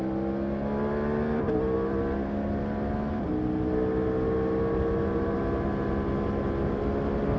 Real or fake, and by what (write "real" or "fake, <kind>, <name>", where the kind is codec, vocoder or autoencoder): real